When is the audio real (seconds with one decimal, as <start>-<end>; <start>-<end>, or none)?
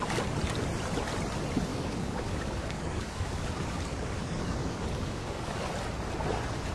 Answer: 0.0-1.7; 5.7-6.7